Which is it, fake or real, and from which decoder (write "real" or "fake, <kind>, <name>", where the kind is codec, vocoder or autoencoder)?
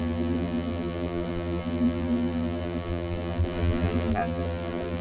fake, vocoder, BigVGAN v2